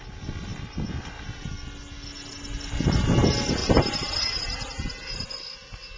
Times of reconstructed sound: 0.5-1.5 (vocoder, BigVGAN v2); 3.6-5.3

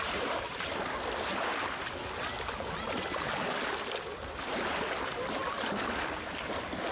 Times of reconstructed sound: none

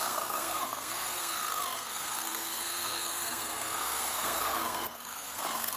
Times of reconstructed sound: 0.0-5.8 (codec, SNAC)

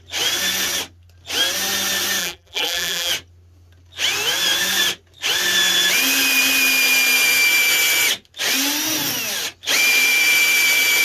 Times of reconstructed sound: 2.2-3.1 (vocoder, BigVGAN v2)

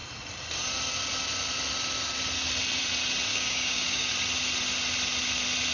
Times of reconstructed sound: 3.3-4.1 (codec, DAC)

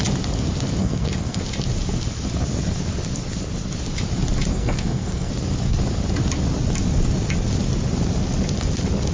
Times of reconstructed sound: 0.8-1.4 (codec, SNAC); 4.5-5.3